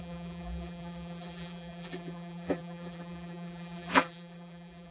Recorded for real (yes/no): no